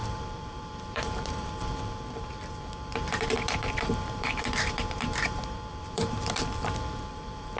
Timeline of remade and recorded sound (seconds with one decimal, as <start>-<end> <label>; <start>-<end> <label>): 0.0-7.6 remade